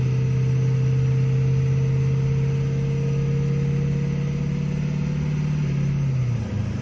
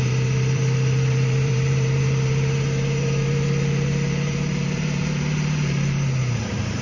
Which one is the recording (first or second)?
first